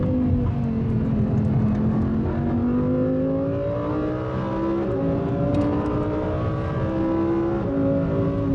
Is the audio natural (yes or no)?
yes